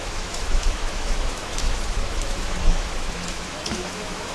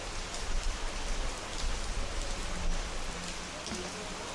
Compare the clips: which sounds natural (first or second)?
second